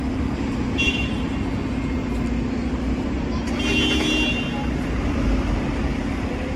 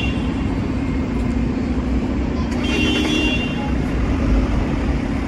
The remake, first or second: second